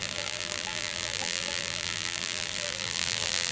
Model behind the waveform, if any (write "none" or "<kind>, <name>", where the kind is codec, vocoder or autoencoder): vocoder, BigVGAN v2